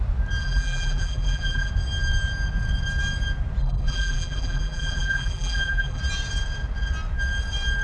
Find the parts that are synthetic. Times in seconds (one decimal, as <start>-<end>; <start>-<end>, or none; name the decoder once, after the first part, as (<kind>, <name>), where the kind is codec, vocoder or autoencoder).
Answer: 0.4-1.7 (vocoder, BigVGAN v2); 3.6-6.0